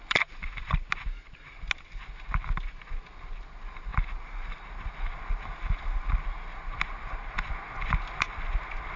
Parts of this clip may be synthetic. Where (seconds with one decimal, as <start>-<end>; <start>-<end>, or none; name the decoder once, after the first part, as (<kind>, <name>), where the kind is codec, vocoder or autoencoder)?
none